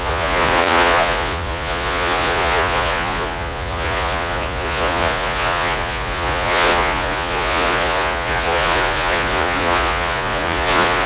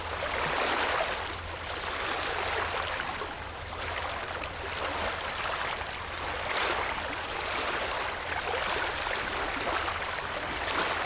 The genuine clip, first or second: second